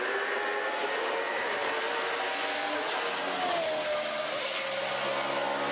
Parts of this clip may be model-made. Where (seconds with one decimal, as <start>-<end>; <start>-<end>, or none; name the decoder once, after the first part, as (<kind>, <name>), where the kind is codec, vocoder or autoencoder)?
none